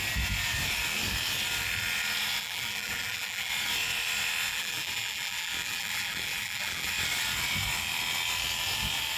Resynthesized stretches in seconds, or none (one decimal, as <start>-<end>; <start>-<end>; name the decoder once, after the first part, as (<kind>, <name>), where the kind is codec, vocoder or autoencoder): 2.4-3.5 (vocoder, BigVGAN v2); 4.5-6.9